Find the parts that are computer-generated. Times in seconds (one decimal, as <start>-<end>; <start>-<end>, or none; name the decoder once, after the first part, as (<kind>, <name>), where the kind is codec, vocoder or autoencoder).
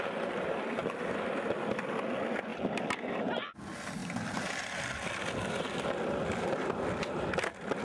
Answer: none